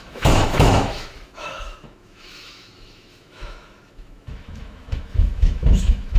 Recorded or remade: remade